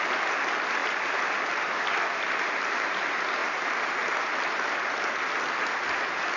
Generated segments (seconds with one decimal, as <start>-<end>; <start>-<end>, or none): none